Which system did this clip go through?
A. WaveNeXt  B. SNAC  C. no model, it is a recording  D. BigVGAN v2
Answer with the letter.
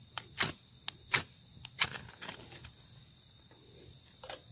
C